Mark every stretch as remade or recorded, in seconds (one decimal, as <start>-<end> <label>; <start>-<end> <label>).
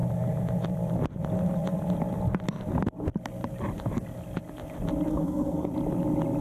0.0-5.1 recorded; 5.1-5.7 remade; 5.7-6.4 recorded